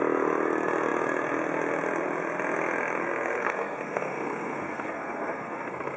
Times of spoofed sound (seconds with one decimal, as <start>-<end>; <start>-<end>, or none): 3.0-6.0